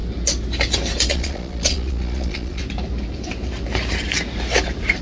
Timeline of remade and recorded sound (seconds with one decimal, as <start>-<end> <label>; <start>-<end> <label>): 0.0-1.1 recorded; 1.1-2.6 remade; 2.6-5.0 recorded